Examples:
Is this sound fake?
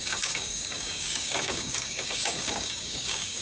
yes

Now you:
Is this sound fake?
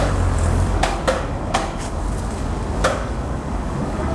yes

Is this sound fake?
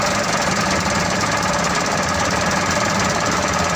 no